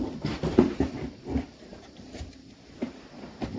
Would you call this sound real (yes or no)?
no